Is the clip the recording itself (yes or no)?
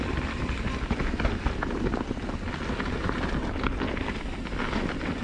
yes